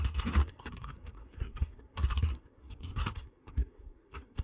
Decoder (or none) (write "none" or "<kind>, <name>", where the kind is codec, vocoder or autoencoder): codec, SNAC